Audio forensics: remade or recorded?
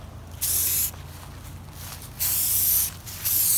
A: recorded